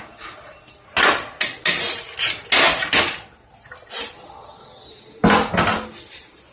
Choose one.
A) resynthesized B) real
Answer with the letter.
B